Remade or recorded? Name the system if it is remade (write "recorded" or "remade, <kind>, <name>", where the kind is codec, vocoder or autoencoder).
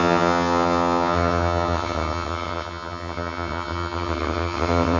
remade, vocoder, HiFi-GAN